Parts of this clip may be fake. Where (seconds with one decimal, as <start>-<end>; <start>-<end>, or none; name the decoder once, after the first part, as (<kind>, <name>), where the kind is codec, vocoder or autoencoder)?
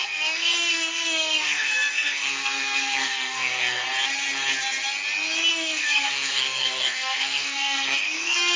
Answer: 0.0-3.8 (codec, SNAC); 5.5-8.6